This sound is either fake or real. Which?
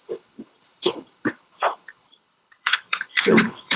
fake